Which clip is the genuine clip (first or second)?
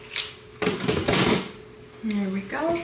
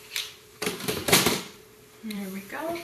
first